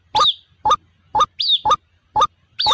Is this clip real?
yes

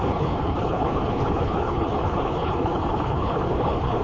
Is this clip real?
no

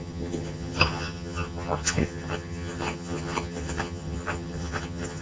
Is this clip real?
no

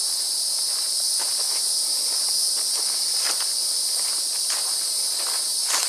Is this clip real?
yes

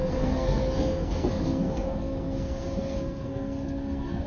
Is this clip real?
no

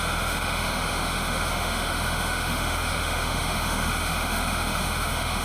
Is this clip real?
no